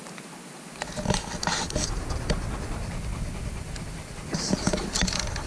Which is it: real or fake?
real